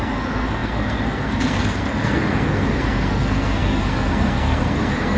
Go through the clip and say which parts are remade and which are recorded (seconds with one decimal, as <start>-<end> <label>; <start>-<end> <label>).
0.0-5.2 remade